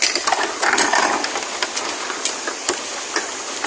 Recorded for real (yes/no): yes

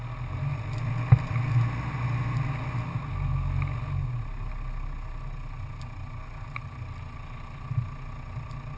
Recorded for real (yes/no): yes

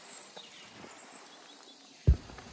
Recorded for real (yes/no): yes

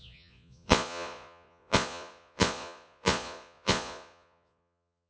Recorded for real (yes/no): no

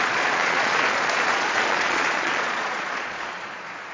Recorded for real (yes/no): no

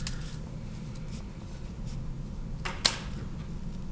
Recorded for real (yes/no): yes